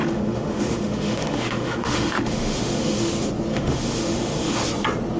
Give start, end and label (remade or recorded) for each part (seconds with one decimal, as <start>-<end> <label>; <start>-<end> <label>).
0.0-3.1 remade; 3.1-3.5 recorded; 3.5-4.6 remade; 4.6-5.2 recorded